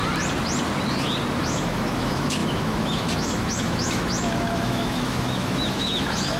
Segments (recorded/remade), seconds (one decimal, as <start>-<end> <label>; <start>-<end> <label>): 0.0-1.4 recorded; 1.4-6.4 remade